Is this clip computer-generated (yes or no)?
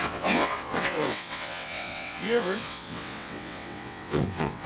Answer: yes